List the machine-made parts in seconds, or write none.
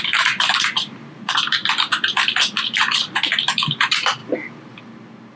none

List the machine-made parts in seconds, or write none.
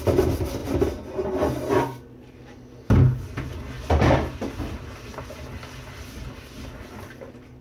none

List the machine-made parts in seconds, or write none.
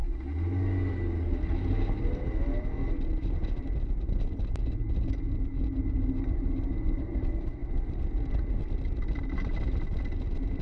2.9-4.8; 6.7-10.6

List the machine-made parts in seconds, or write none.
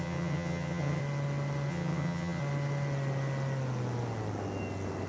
0.0-1.0; 1.7-2.4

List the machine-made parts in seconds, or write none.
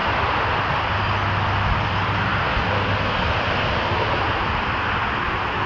none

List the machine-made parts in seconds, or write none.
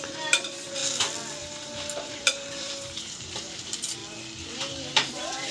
0.0-0.8; 1.4-4.0; 4.9-5.5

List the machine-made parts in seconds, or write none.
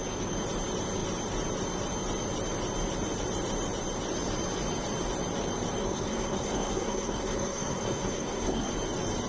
5.8-8.7